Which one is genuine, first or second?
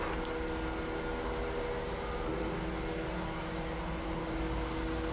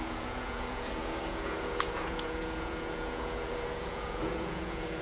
first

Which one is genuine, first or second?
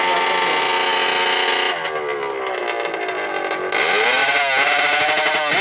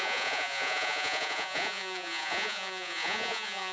first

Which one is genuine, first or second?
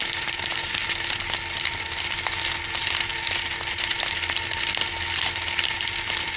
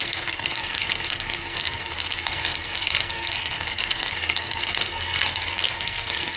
first